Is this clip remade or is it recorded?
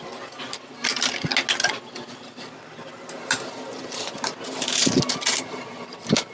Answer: recorded